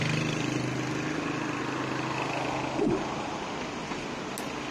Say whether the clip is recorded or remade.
recorded